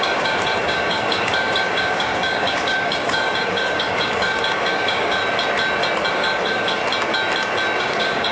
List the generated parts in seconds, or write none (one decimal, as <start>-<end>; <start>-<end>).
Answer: 0.0-5.2; 6.1-6.8; 7.8-8.3